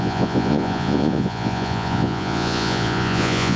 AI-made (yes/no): yes